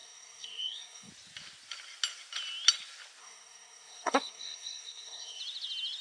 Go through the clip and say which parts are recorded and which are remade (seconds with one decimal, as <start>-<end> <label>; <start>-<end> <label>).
0.0-1.1 remade; 1.1-3.2 recorded; 3.2-5.4 remade; 5.4-6.0 recorded